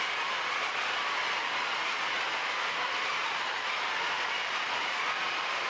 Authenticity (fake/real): real